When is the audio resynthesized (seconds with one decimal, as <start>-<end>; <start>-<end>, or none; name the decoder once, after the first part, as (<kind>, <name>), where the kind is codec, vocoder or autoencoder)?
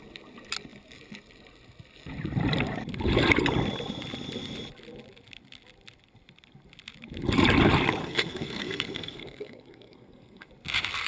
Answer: 8.0-10.5 (codec, SNAC)